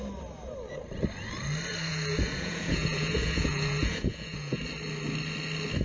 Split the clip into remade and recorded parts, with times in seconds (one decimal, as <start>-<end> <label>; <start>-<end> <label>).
0.0-1.9 recorded; 1.9-4.6 remade; 4.6-5.8 recorded